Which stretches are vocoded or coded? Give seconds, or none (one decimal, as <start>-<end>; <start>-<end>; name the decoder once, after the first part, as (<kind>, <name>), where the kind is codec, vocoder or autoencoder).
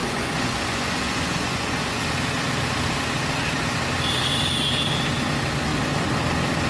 0.0-2.0 (vocoder, Vocos)